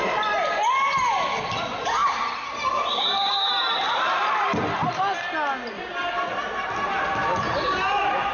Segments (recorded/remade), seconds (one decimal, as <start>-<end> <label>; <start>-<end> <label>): 0.0-8.3 recorded